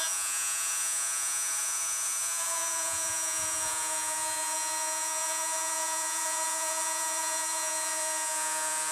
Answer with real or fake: fake